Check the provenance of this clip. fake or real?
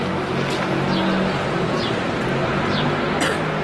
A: real